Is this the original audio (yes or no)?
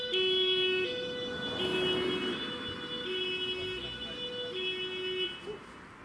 yes